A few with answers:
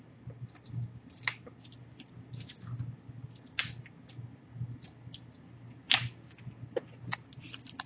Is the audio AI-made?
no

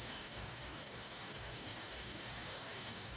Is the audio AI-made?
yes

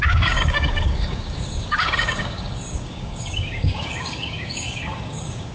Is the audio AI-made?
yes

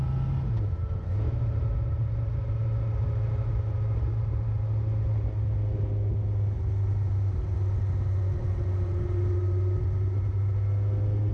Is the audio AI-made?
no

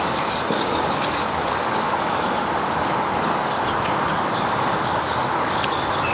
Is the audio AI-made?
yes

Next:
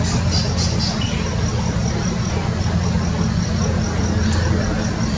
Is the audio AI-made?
no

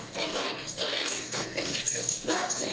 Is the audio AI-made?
yes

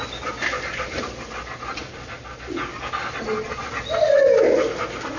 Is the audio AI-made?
no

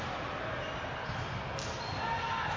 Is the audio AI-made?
no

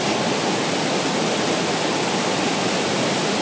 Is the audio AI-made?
no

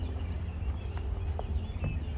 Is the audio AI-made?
no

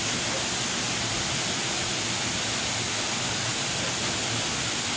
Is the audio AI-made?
no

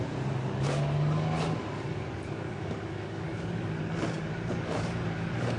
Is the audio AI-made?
yes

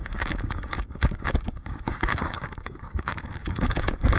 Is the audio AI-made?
yes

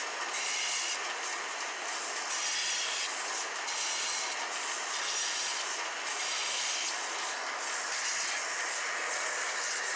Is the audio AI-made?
no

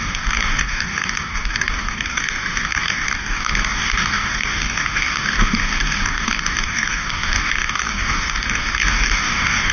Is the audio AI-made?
yes